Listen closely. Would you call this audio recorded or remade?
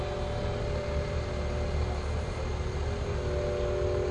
recorded